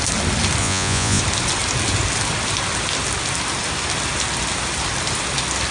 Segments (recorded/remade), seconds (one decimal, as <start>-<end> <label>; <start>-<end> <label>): 0.0-0.6 recorded; 0.6-1.2 remade; 1.2-5.7 recorded